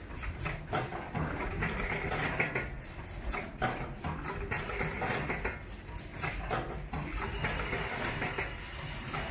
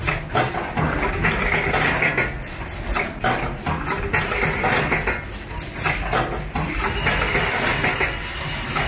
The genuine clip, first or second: second